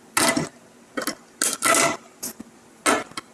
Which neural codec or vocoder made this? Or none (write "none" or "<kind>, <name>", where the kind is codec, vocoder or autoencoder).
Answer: none